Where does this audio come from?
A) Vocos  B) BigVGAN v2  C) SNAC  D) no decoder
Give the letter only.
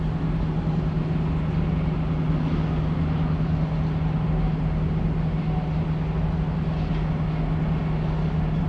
D